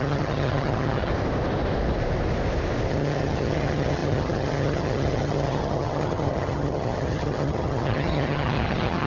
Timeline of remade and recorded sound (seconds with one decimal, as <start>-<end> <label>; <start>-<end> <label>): 0.0-1.1 remade; 1.1-2.9 recorded; 2.9-9.1 remade